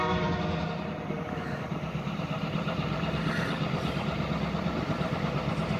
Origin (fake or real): fake